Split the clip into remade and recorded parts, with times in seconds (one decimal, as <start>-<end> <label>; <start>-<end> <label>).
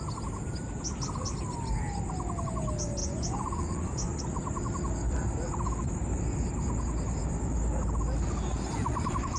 0.0-3.0 recorded; 3.0-4.2 remade; 4.2-9.4 recorded